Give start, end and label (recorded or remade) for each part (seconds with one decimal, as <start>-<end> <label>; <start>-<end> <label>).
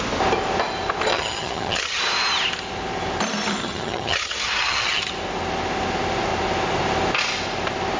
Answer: 0.0-1.1 recorded; 1.1-2.0 remade; 2.0-3.6 recorded; 3.6-5.1 remade; 5.1-8.0 recorded